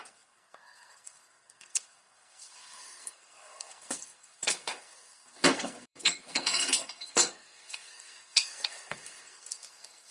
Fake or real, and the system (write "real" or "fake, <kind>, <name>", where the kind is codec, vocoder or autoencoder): fake, codec, SNAC